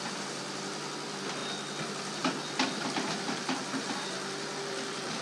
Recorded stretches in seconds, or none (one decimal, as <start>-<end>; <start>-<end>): 1.4-2.2